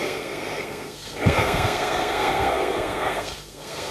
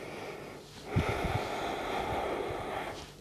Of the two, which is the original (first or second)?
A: second